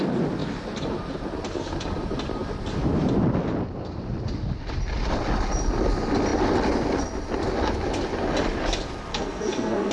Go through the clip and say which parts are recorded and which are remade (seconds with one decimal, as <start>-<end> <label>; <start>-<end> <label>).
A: 0.0-9.1 recorded; 9.1-9.9 remade